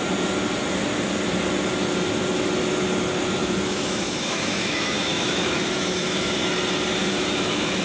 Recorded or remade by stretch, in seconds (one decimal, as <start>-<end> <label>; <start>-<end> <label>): 0.0-3.4 recorded; 3.4-6.4 remade; 6.4-7.0 recorded; 7.0-7.8 remade